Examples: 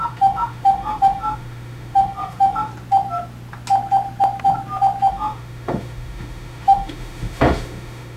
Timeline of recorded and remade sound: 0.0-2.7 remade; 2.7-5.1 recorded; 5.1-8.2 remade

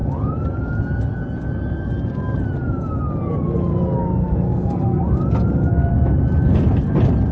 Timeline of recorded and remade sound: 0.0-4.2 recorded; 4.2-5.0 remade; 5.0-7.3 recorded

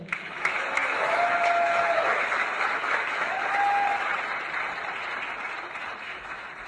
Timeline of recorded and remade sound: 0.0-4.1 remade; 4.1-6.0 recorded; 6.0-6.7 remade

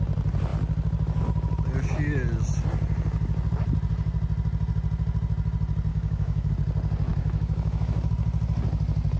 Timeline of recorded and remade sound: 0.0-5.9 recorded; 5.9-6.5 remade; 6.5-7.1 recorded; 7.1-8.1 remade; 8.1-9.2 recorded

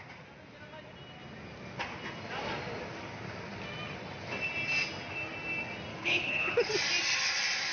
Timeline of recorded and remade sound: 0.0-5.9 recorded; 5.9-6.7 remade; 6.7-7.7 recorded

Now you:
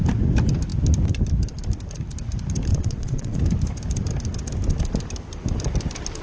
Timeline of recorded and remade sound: 0.0-2.7 recorded; 2.7-3.4 remade; 3.4-6.2 recorded